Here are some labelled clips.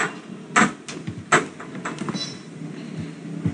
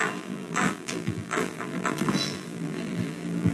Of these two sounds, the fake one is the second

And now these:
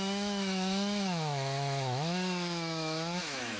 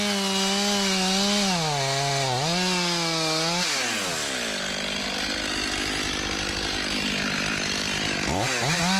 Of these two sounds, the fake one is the first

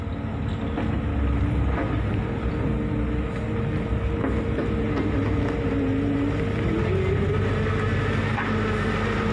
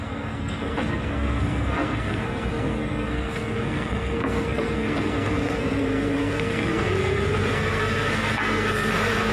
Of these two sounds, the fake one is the second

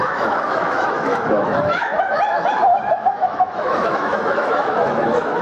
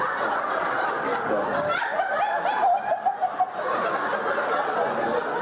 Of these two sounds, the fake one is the first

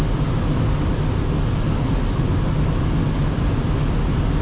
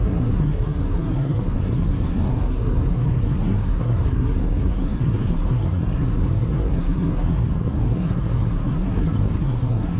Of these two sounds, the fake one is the second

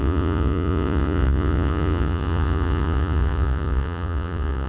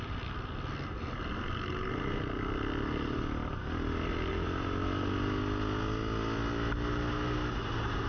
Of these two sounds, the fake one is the first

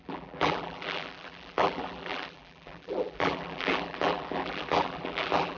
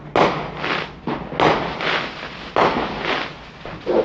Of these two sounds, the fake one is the first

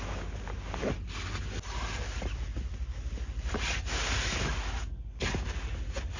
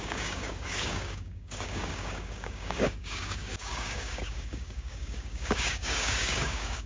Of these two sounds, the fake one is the second